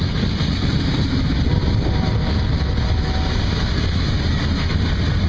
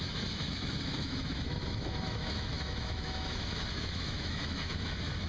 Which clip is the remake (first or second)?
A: second